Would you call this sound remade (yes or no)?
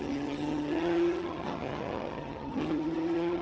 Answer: yes